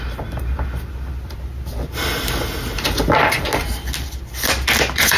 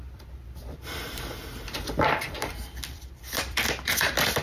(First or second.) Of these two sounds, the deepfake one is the second